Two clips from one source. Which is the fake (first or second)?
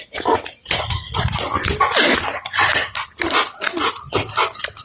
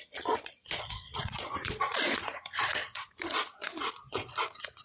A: second